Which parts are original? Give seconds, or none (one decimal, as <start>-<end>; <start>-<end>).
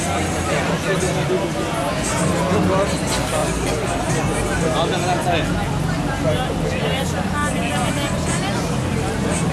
0.0-3.4; 4.0-9.5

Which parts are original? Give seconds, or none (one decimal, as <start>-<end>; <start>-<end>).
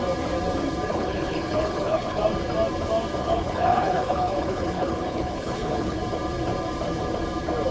0.0-0.9; 2.2-3.2; 6.0-7.7